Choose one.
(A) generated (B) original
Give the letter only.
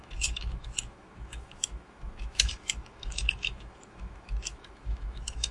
A